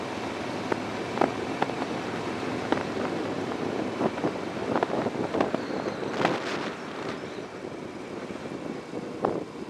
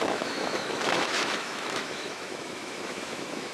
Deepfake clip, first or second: second